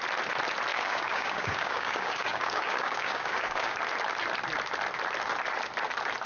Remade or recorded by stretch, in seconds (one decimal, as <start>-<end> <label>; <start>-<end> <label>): 0.0-0.7 recorded; 0.7-3.8 remade; 3.8-6.3 recorded